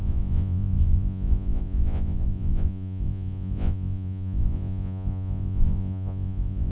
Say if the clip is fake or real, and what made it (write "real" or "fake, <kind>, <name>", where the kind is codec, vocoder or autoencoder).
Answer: fake, vocoder, Vocos